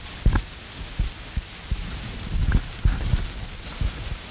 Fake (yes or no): no